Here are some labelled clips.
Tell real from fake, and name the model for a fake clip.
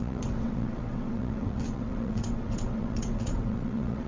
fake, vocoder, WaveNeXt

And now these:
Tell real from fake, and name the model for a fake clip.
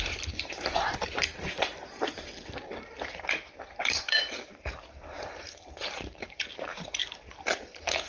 fake, vocoder, BigVGAN v2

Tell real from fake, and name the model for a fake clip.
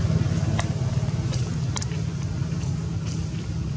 fake, vocoder, BigVGAN v2